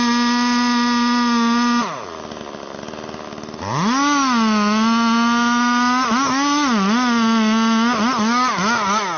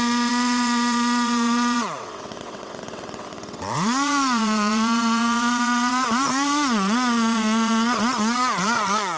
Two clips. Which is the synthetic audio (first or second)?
second